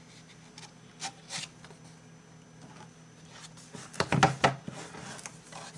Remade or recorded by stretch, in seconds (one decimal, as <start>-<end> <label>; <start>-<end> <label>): 0.0-5.8 recorded